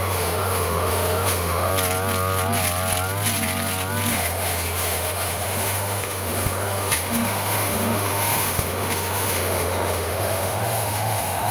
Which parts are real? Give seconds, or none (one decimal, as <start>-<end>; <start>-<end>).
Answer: 1.7-4.1

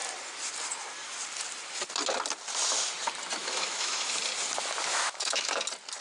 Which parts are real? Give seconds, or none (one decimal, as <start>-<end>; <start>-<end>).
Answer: 0.0-3.4; 4.2-4.9; 5.5-6.0

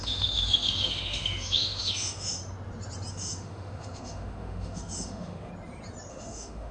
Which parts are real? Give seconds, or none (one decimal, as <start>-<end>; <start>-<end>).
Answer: 2.4-3.1; 5.5-6.1

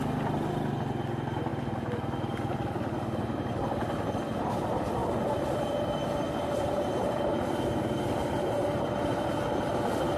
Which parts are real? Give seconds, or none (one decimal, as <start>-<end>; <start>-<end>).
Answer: 0.0-10.2

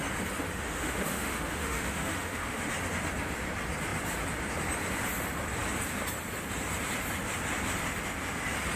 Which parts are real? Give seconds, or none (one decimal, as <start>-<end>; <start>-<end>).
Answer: 0.0-0.5; 2.7-8.8